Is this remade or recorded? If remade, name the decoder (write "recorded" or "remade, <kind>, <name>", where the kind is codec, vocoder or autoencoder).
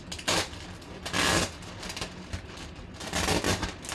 recorded